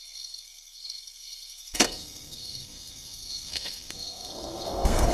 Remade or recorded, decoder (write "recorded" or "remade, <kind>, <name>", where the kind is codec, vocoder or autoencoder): remade, codec, SNAC